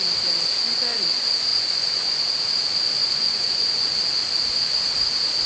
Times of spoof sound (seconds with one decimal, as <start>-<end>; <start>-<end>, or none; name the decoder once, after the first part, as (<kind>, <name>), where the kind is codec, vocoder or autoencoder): 1.5-2.2 (vocoder, Vocos); 3.0-4.0